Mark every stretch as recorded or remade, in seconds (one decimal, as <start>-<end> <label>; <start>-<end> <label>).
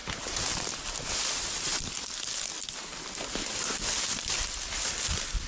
0.0-5.5 recorded